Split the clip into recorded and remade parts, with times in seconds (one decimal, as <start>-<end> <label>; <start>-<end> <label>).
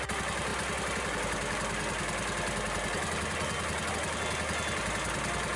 0.0-5.6 recorded